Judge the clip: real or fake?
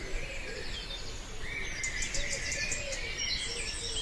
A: real